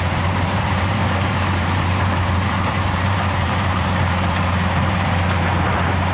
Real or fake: fake